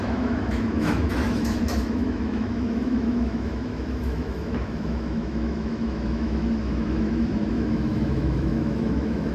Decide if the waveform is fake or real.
fake